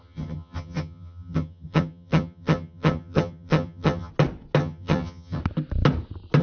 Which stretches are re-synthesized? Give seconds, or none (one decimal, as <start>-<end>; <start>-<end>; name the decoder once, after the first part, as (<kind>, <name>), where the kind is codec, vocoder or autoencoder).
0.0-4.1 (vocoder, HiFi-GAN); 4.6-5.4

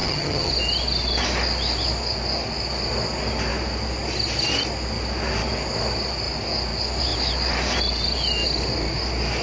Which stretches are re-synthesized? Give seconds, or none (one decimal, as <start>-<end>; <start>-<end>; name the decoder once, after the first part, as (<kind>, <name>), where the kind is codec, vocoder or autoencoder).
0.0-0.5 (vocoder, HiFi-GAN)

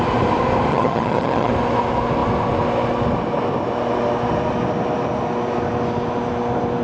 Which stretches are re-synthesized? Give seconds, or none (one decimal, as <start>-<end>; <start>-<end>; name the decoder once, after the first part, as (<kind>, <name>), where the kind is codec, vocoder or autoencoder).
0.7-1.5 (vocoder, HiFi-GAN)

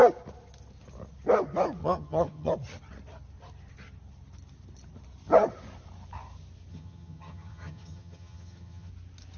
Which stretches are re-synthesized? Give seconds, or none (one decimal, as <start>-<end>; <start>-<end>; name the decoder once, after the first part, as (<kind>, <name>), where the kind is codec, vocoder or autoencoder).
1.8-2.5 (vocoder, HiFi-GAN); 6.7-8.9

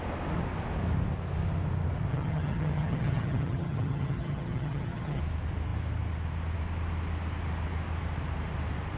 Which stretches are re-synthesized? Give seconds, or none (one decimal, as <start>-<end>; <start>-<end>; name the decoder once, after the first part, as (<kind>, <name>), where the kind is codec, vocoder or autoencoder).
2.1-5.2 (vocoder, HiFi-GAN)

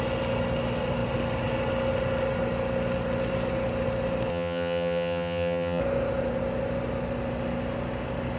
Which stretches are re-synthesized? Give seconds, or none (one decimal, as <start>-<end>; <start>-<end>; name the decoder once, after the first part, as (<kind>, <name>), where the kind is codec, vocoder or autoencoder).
4.3-5.8 (vocoder, HiFi-GAN)

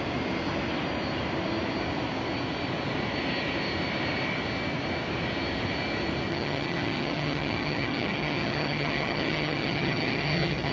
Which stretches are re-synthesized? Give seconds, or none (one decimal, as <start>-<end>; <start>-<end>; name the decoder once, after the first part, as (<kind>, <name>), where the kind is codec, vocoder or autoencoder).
6.3-10.7 (vocoder, HiFi-GAN)

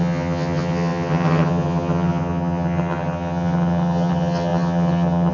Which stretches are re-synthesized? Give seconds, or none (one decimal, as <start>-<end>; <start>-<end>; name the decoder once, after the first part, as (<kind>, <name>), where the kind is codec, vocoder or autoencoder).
0.0-5.3 (vocoder, HiFi-GAN)